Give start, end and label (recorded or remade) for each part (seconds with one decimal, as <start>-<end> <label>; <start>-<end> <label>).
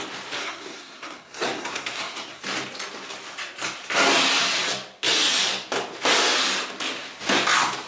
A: 0.0-0.4 recorded; 0.4-2.4 remade; 2.4-7.9 recorded